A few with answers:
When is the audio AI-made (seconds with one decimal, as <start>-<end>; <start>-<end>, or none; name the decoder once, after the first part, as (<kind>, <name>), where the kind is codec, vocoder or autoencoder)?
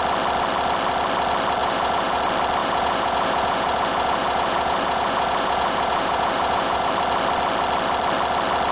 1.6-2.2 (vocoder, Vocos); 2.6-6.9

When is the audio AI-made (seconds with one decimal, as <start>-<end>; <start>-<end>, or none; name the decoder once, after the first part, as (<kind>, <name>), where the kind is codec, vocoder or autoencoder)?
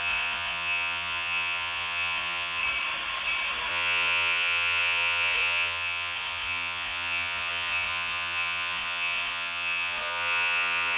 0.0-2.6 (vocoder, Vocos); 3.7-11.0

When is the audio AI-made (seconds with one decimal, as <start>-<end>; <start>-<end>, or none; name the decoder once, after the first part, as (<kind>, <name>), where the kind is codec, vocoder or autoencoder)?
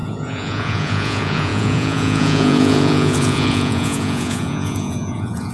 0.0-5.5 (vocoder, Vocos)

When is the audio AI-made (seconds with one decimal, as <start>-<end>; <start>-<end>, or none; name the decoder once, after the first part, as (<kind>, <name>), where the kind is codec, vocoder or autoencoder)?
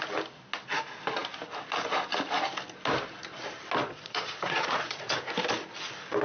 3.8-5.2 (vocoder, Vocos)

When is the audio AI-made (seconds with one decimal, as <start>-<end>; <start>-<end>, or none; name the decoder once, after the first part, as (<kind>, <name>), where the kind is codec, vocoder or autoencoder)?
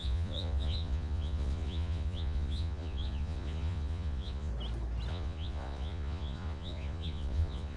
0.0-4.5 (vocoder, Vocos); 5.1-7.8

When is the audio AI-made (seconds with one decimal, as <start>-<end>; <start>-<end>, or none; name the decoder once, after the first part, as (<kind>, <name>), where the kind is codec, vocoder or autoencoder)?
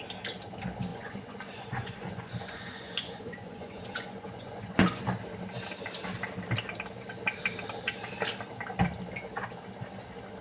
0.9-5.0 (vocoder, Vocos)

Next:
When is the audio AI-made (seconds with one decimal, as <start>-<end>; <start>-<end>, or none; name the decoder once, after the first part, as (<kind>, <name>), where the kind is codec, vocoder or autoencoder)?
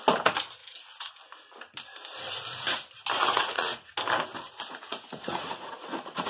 0.6-1.1 (vocoder, Vocos); 3.2-3.9; 4.5-6.3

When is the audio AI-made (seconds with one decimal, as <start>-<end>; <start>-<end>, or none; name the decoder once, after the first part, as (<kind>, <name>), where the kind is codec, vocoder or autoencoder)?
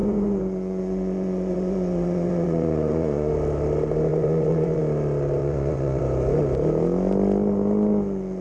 0.0-3.3 (vocoder, Vocos); 4.1-4.8; 5.4-6.0